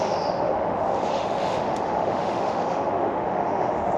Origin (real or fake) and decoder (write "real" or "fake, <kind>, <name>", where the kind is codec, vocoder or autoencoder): fake, autoencoder, DAC-VAE